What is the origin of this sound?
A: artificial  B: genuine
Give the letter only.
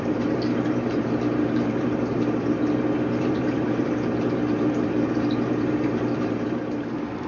A